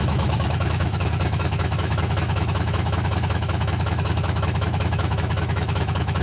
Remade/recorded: remade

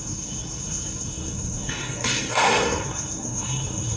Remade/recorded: remade